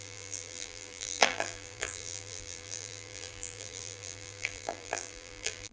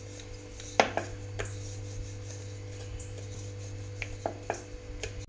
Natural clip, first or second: second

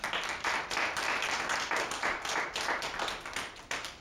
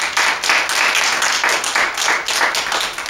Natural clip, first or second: second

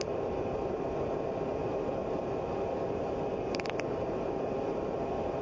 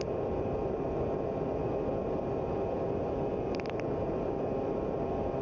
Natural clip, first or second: second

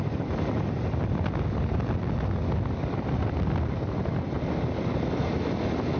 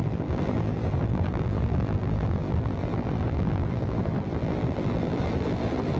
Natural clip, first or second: first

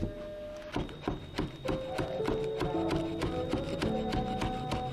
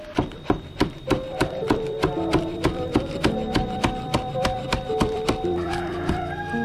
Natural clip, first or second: first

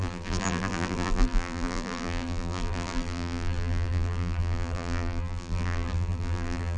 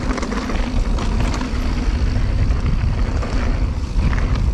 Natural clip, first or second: second